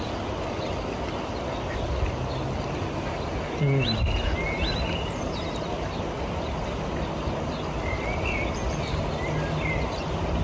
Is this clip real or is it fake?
real